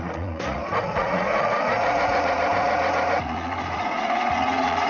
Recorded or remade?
remade